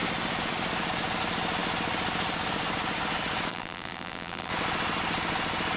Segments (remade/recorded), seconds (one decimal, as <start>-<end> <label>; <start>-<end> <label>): 0.0-3.5 recorded; 3.5-4.5 remade; 4.5-5.8 recorded